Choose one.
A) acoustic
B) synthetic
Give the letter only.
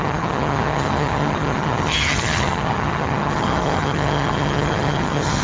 B